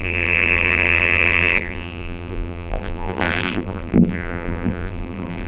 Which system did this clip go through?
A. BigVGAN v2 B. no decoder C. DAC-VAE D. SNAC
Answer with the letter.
A